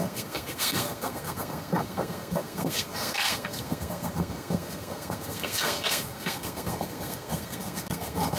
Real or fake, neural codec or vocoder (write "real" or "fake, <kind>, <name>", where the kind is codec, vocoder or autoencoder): fake, codec, SNAC